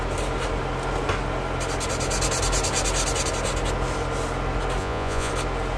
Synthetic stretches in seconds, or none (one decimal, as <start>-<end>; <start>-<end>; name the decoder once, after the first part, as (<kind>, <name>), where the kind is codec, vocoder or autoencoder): 4.8-5.3 (vocoder, Vocos)